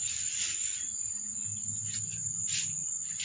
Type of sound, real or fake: real